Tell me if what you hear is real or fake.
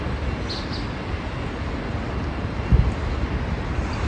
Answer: real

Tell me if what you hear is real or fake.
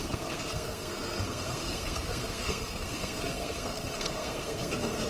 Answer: fake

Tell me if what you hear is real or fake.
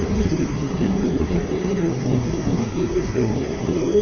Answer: fake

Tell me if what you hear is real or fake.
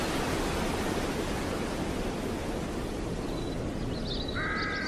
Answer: real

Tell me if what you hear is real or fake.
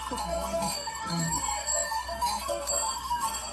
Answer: fake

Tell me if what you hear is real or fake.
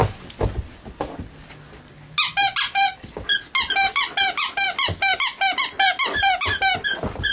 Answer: real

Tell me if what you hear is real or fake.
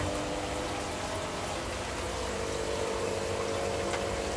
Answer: real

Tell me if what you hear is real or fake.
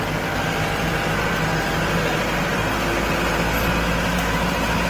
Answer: real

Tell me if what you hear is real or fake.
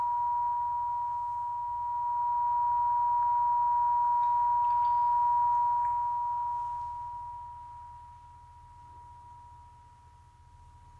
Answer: real